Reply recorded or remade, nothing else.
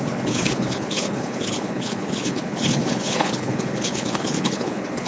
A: remade